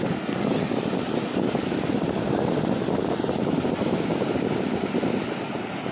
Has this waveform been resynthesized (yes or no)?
no